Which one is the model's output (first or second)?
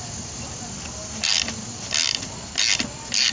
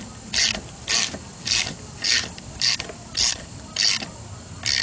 second